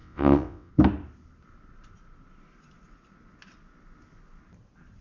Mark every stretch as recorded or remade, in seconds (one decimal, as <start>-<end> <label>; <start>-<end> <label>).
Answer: 0.0-0.7 remade; 0.7-5.0 recorded